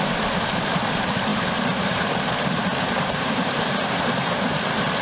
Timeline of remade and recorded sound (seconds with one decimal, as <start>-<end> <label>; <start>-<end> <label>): 0.0-1.3 recorded; 1.3-3.9 remade; 3.9-5.0 recorded